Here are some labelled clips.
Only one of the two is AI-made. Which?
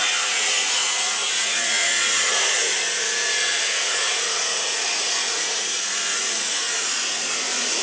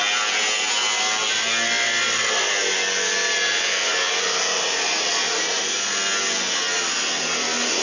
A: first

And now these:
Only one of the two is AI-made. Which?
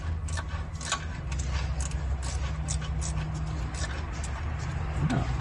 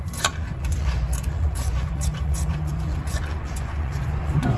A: second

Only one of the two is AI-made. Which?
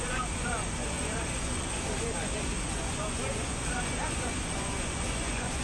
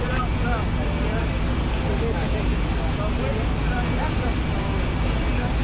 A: first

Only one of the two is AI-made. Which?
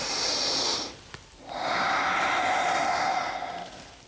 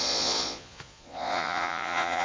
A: second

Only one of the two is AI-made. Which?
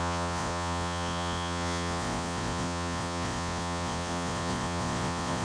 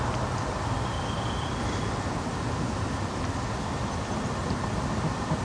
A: first